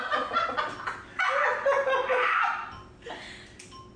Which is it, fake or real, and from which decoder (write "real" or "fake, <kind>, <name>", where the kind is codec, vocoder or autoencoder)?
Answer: real